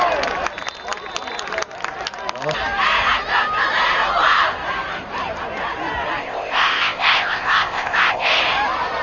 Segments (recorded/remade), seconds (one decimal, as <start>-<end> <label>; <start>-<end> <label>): 0.0-6.2 recorded; 6.2-8.4 remade; 8.4-9.0 recorded